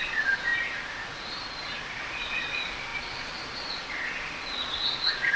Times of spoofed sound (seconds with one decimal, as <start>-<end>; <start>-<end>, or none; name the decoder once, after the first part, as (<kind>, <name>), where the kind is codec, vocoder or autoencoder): 0.0-0.5 (vocoder, Vocos); 2.1-5.4

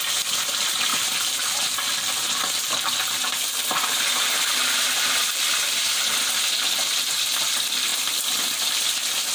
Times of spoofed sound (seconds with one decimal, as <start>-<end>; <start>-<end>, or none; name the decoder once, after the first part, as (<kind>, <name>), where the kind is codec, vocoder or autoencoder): 0.9-5.5 (vocoder, BigVGAN v2)

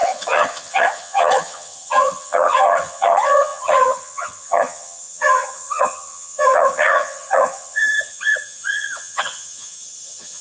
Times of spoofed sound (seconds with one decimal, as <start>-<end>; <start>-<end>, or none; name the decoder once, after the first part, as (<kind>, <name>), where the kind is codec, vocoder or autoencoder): 0.0-10.4 (vocoder, HiFi-GAN)

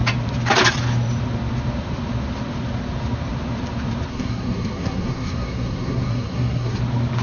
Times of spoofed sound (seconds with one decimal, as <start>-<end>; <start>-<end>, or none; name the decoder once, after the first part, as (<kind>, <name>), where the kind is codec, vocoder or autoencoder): 4.1-6.8 (codec, SNAC)

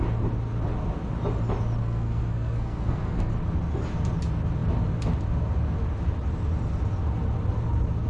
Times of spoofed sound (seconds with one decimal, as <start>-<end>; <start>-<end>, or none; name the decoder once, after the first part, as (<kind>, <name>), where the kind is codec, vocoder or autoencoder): 1.8-3.3 (codec, SNAC)